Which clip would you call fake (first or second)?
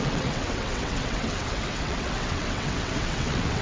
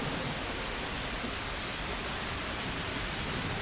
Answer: first